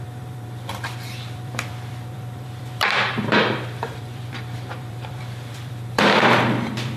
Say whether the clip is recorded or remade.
remade